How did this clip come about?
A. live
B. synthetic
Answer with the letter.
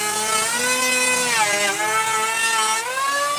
A